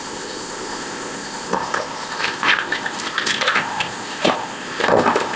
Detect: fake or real fake